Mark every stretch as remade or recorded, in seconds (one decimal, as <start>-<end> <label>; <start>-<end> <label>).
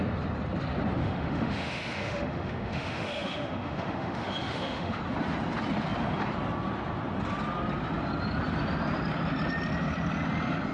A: 0.0-1.0 recorded; 1.0-5.0 remade; 5.0-10.7 recorded